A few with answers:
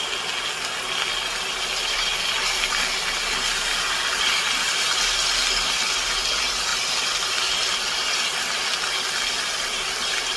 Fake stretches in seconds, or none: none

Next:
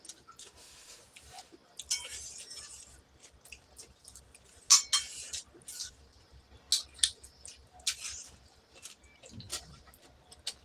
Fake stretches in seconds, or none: 0.4-1.0 (autoencoder, DAC-VAE)

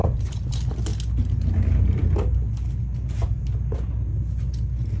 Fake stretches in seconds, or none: none

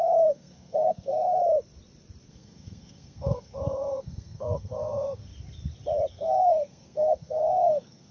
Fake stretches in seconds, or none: 0.0-1.4 (codec, SNAC); 2.3-5.3; 6.1-8.1

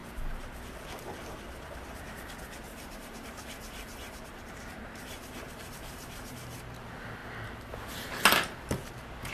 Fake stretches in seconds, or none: 2.7-6.3 (vocoder, BigVGAN v2)